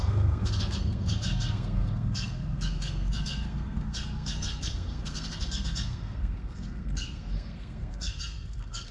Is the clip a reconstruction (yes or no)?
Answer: yes